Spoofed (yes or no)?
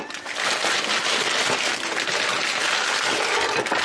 no